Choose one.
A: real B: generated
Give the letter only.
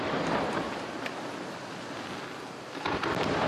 A